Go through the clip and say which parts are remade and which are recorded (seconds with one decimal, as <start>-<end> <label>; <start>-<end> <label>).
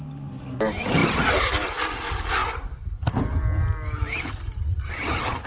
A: 0.0-5.5 recorded